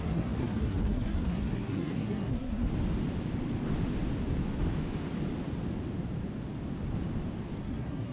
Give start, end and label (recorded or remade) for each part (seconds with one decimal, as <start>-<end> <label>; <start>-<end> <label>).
0.0-2.7 remade; 2.7-7.6 recorded; 7.6-8.1 remade